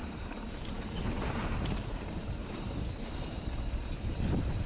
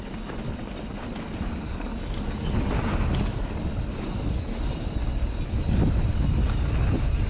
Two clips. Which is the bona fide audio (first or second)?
second